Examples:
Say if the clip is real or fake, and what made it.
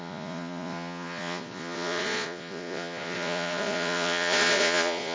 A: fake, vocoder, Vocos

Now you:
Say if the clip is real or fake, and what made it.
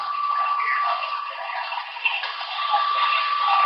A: fake, vocoder, BigVGAN v2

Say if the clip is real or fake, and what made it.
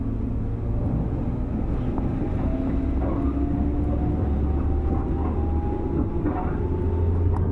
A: real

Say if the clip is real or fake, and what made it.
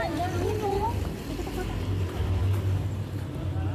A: real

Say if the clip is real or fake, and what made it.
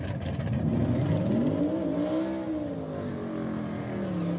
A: real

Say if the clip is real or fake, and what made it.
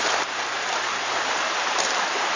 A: fake, vocoder, BigVGAN v2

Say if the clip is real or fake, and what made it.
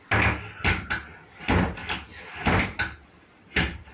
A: real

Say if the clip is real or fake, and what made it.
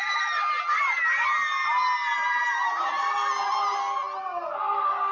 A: real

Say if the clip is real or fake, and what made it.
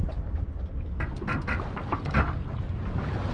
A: real